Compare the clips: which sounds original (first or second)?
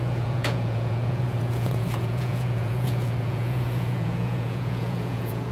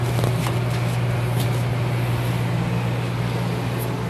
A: second